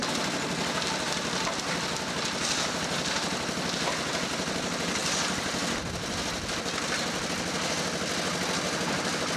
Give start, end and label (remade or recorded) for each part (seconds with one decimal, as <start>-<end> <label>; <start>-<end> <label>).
0.0-9.4 recorded